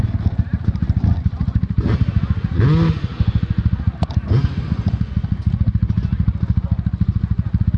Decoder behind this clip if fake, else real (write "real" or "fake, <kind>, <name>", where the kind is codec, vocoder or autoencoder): real